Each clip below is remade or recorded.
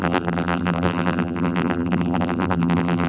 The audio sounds remade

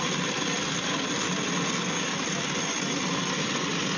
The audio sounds recorded